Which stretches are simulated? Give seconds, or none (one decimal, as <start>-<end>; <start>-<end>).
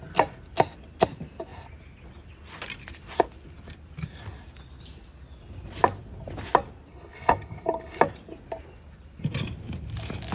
6.9-8.0